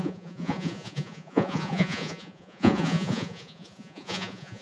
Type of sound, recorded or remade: remade